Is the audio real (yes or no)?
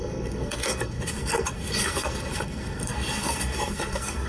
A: no